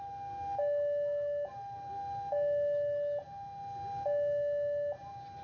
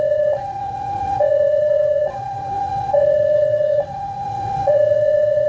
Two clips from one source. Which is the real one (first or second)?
first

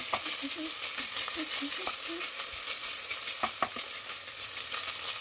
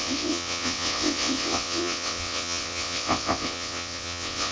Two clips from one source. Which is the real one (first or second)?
first